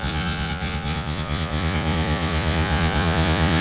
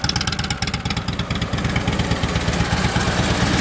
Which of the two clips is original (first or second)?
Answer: second